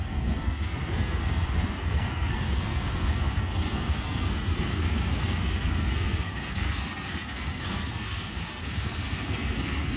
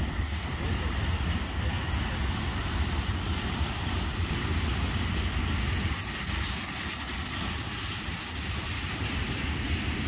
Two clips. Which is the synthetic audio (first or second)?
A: first